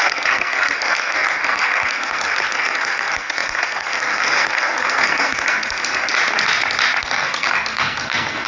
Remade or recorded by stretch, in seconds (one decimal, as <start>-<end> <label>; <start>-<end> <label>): 0.0-6.1 remade; 6.1-7.0 recorded; 7.0-8.5 remade